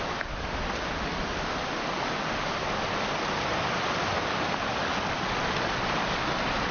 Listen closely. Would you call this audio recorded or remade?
recorded